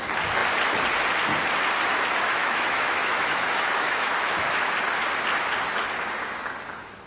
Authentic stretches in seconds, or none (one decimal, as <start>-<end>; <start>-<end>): 0.0-2.4; 4.7-7.1